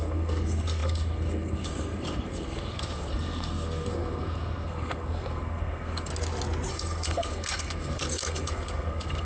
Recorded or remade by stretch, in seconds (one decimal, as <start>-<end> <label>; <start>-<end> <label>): 0.0-6.1 remade; 6.1-6.7 recorded; 6.7-9.2 remade